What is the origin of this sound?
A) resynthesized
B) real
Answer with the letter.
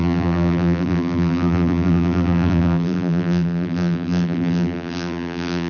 A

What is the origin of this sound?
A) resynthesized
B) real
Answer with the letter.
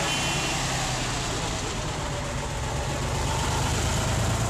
B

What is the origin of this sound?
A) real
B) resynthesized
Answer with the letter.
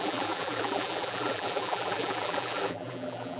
B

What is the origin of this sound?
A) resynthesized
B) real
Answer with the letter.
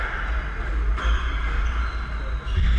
B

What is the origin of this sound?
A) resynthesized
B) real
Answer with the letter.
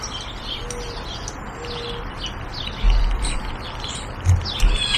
B